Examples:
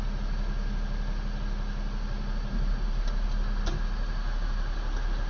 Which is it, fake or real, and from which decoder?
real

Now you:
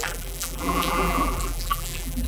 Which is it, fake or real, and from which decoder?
fake, vocoder, BigVGAN v2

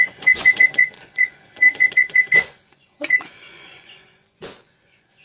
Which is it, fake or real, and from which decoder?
fake, vocoder, Vocos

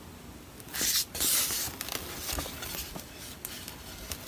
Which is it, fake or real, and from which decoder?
real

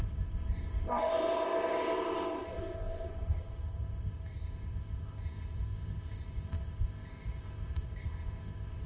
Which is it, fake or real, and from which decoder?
fake, codec, ZipCodec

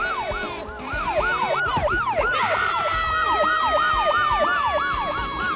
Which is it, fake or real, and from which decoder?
fake, vocoder, BigVGAN v2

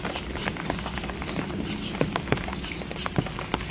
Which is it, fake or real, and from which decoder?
real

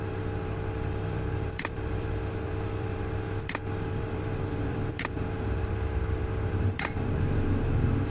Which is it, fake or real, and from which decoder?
fake, vocoder, BigVGAN v2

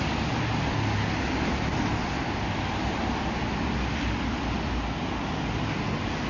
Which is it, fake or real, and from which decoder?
real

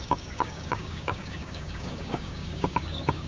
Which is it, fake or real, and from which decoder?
fake, codec, DAC